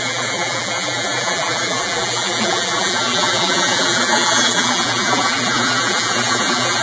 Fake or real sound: fake